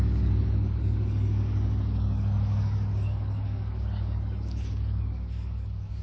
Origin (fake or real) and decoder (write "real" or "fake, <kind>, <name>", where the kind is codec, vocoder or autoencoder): fake, codec, DAC